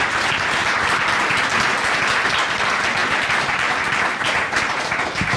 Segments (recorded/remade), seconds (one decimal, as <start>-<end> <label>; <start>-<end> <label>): 0.0-0.6 recorded; 0.6-1.6 remade; 1.6-3.0 recorded; 3.0-4.8 remade; 4.8-5.4 recorded